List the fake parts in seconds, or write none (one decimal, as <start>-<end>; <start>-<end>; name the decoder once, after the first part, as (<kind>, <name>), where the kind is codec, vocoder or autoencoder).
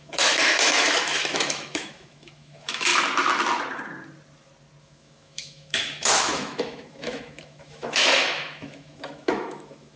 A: 0.0-2.9 (autoencoder, DAC-VAE); 4.8-10.0